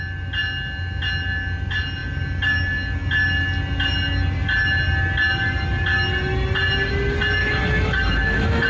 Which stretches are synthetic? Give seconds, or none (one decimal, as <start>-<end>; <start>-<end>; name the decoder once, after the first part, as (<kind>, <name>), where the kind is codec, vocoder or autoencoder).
7.4-8.7 (autoencoder, DAC-VAE)